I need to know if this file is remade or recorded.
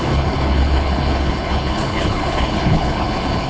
remade